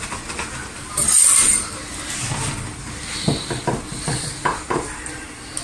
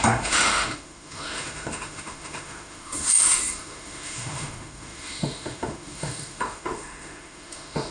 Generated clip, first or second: second